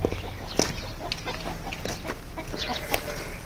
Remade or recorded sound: recorded